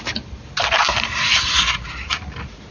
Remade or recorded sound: recorded